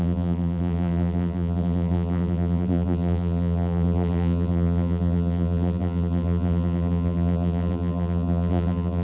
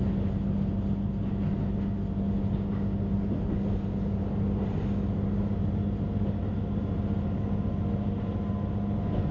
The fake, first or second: first